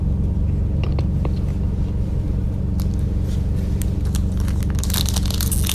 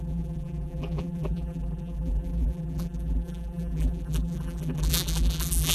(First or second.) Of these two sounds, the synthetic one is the second